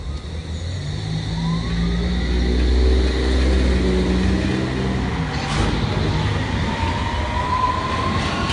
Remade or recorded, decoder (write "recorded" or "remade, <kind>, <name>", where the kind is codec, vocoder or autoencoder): recorded